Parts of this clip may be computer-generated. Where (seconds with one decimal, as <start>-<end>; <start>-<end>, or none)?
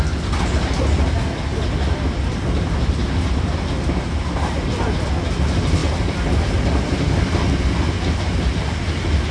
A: none